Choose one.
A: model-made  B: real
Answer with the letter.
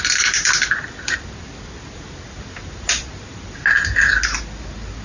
B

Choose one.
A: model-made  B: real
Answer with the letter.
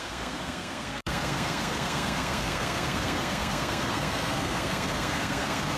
A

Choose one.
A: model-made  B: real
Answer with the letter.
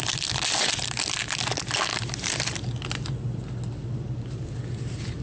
B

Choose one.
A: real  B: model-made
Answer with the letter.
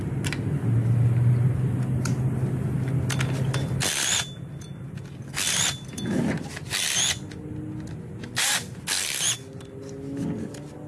A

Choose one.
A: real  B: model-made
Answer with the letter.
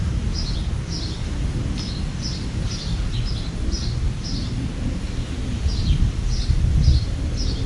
A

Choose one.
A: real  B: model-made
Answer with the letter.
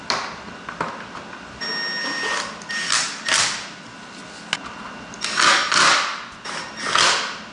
A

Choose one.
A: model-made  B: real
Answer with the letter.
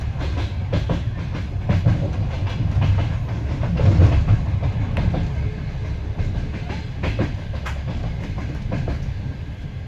B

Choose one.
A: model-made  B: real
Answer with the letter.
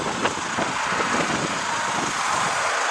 B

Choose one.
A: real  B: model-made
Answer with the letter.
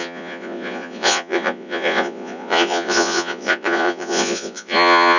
B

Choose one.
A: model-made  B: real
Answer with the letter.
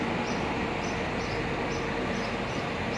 B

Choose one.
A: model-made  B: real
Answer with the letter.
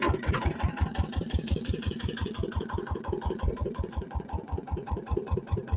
A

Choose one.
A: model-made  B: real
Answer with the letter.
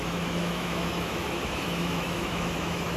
A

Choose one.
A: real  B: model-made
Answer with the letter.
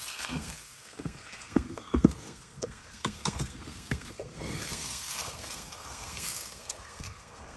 B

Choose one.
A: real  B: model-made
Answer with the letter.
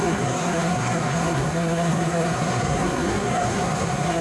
B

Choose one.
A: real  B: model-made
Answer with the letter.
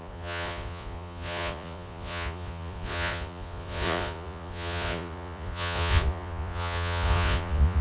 B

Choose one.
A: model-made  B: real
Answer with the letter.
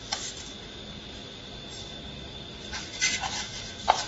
B